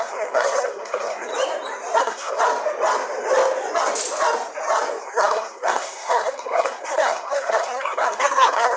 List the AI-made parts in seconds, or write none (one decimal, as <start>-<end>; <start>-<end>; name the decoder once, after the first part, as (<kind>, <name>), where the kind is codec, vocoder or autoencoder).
0.0-1.3 (codec, SNAC); 2.0-2.4; 5.0-8.8